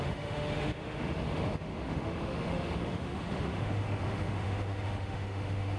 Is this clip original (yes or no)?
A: no